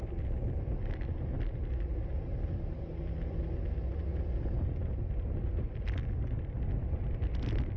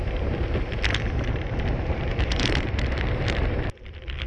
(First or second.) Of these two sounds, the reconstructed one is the second